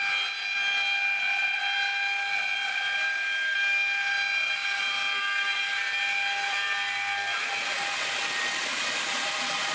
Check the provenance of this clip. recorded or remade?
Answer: recorded